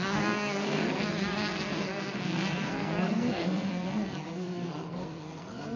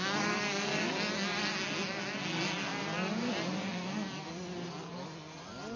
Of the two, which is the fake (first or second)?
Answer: first